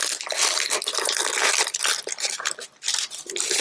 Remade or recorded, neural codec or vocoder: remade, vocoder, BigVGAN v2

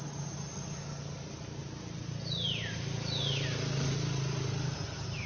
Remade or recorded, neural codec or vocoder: recorded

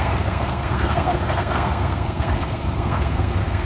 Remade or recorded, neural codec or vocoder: remade, codec, SNAC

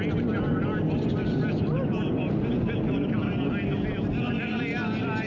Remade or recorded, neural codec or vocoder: recorded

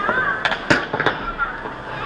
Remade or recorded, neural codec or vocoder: recorded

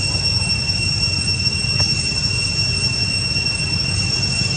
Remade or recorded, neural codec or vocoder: recorded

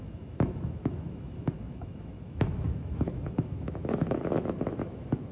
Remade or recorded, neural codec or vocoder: remade, autoencoder, DAC-VAE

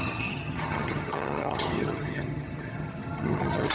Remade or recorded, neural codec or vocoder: remade, vocoder, HiFi-GAN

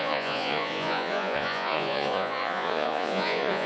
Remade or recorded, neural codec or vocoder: remade, vocoder, Vocos